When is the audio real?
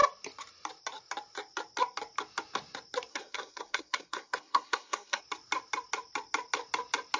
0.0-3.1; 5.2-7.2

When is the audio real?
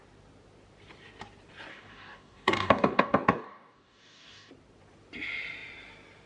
0.0-1.7; 4.5-6.3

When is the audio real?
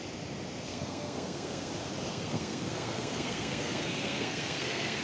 0.0-0.7; 1.7-2.1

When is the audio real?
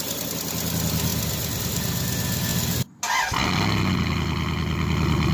0.0-5.3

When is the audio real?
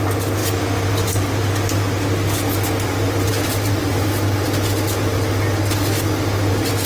0.0-2.9; 3.8-6.9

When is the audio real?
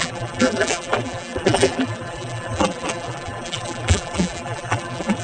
none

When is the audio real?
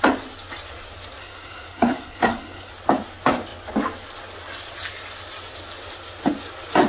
0.0-1.2; 2.7-6.9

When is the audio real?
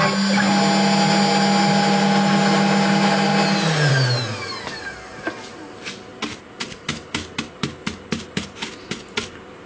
0.0-9.7